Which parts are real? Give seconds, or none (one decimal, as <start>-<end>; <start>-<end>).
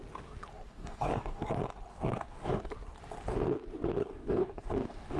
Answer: 0.0-0.7; 1.4-1.9; 2.7-4.0